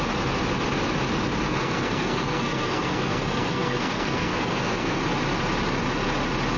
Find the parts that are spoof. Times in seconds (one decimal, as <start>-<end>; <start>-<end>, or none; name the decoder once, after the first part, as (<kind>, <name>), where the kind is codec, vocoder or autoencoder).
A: 1.5-5.0 (codec, SNAC)

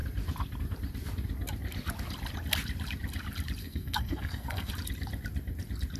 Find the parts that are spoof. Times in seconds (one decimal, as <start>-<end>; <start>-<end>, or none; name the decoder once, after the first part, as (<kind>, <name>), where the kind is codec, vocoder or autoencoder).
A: 3.6-4.7 (codec, SNAC)

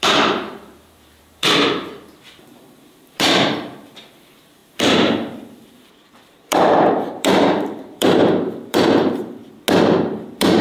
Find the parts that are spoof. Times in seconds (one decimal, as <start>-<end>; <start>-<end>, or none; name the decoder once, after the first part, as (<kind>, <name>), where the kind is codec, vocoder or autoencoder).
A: 0.0-9.4 (vocoder, BigVGAN v2); 10.0-10.6

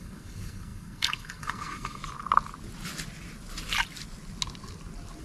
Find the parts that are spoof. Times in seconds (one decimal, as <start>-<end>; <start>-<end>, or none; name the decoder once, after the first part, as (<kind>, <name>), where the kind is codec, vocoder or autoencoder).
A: 0.0-2.0 (codec, SNAC)

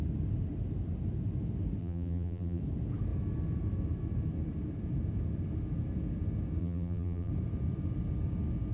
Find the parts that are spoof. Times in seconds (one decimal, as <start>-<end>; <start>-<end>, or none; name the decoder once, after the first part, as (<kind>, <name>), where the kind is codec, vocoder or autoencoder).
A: 1.8-2.6 (vocoder, BigVGAN v2); 6.6-7.3

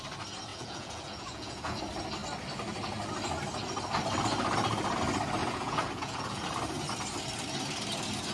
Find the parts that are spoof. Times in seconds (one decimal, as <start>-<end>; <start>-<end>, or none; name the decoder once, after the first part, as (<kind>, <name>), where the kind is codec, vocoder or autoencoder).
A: 0.5-1.8 (vocoder, Vocos); 5.4-6.4